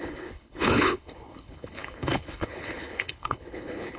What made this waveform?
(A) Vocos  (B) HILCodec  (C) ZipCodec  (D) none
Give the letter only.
B